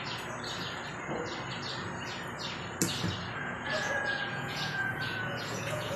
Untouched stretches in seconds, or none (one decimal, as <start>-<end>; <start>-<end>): 0.0-3.4